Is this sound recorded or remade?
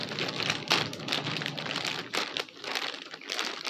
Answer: recorded